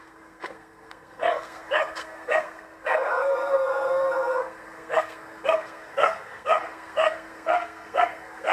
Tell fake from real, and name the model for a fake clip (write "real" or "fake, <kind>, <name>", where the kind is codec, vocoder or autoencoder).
fake, codec, SNAC